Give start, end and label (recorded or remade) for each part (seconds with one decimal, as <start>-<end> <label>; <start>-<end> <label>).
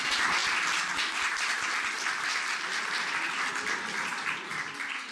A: 0.0-5.1 recorded